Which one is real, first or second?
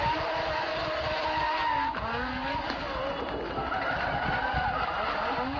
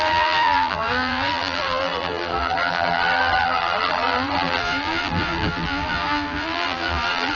first